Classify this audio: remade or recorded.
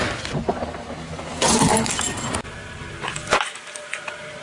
recorded